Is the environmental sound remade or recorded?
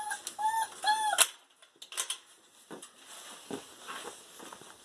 recorded